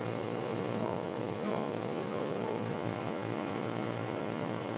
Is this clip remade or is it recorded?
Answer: remade